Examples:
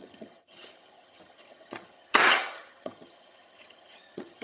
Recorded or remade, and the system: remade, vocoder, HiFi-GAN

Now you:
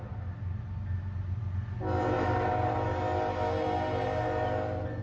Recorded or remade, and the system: recorded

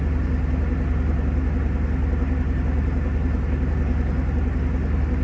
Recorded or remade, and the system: recorded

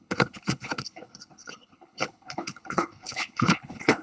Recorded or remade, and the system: remade, codec, HILCodec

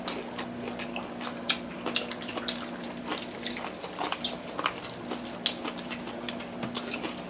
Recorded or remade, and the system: recorded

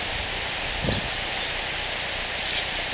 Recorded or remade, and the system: recorded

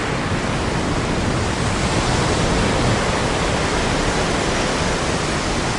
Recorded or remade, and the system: recorded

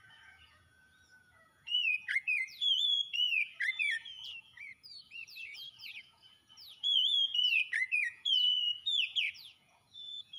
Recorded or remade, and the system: remade, vocoder, Vocos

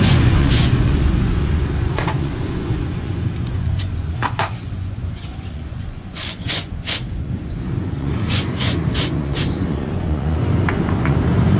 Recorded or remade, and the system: remade, vocoder, Vocos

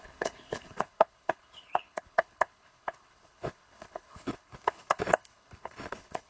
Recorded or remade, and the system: remade, codec, HILCodec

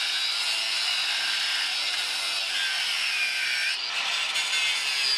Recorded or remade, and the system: recorded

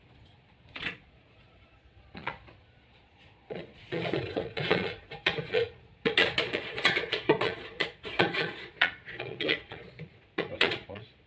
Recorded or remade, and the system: remade, vocoder, Vocos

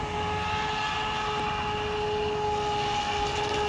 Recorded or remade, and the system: recorded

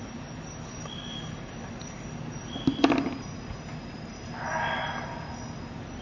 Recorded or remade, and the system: recorded